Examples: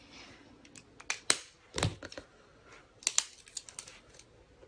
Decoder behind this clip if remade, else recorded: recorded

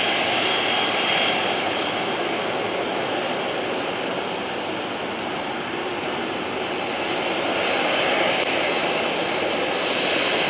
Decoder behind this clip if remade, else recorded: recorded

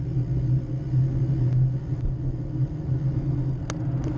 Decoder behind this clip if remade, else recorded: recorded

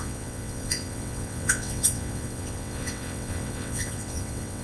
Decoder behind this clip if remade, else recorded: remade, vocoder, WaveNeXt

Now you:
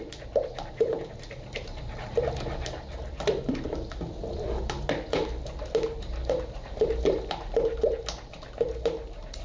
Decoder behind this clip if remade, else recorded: recorded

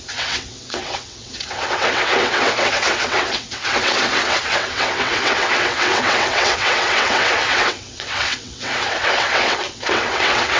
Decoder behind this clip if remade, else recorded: remade, vocoder, WaveNeXt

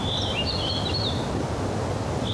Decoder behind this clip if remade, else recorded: recorded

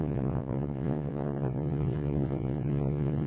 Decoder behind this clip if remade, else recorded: remade, vocoder, WaveNeXt